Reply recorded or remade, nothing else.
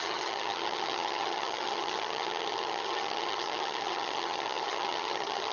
remade